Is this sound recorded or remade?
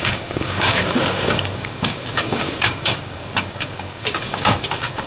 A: remade